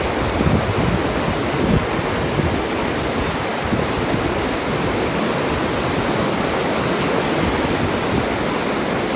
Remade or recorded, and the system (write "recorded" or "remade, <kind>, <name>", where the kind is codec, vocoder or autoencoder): recorded